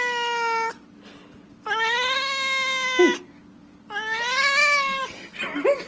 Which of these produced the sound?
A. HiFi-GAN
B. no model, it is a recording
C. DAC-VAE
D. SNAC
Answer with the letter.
B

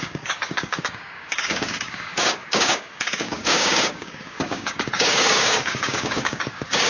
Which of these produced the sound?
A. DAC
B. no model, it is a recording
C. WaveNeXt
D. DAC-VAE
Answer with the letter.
A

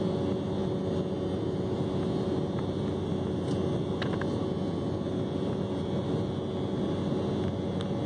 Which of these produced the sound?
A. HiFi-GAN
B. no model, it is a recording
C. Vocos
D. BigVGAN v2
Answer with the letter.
B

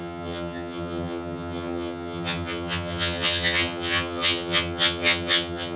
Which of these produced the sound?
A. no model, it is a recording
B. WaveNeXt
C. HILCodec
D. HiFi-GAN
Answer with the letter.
D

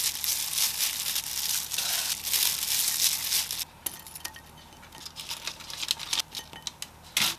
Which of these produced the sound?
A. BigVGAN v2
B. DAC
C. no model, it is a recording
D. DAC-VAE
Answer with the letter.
C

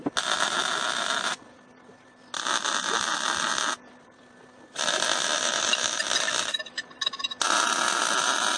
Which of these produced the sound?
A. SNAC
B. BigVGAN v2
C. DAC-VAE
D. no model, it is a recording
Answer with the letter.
D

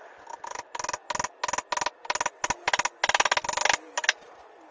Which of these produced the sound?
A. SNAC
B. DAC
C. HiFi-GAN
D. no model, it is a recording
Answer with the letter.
D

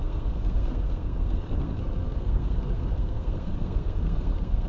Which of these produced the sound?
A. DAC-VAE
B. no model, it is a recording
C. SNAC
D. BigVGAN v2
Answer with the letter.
C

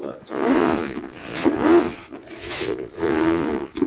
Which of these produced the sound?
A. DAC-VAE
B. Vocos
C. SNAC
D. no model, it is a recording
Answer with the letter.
B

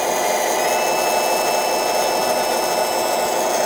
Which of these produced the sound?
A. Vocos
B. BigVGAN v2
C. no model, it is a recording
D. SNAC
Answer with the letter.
C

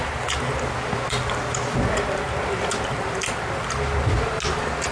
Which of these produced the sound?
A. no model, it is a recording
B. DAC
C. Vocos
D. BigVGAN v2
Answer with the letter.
A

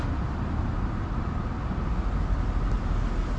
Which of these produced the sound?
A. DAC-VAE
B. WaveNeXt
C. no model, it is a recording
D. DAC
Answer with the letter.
C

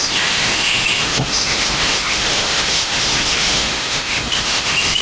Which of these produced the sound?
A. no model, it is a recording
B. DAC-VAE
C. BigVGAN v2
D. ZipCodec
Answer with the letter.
B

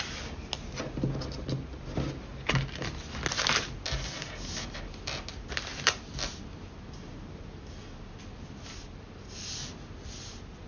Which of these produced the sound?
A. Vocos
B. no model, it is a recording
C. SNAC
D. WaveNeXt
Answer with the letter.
B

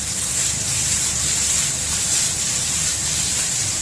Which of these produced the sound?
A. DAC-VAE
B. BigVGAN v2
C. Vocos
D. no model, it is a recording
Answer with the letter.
B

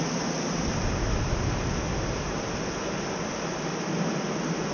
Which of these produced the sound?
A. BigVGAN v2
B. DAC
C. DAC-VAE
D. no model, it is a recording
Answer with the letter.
D